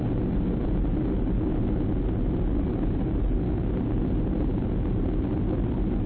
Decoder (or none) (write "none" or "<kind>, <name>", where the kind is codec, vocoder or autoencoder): none